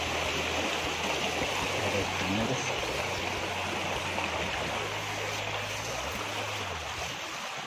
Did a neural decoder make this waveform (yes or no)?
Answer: no